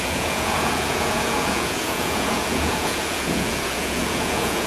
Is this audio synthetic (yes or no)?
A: yes